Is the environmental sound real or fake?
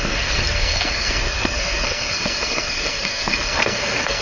fake